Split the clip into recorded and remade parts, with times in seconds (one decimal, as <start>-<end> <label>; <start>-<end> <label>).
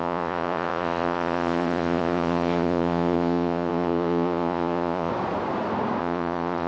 0.0-5.1 remade; 5.1-6.0 recorded; 6.0-6.7 remade